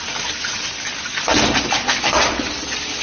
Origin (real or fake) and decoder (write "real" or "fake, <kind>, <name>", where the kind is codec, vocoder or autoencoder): real